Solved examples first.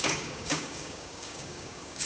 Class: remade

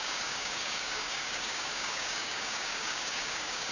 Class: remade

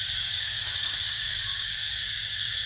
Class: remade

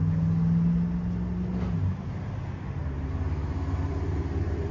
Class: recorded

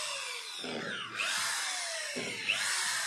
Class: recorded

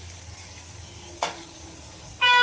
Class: remade